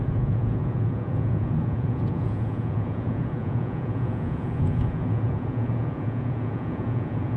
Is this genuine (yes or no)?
no